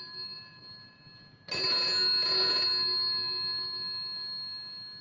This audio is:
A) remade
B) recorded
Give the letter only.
B